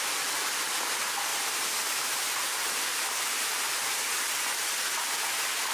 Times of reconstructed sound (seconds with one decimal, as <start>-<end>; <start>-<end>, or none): none